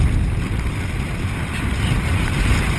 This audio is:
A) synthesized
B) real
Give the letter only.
B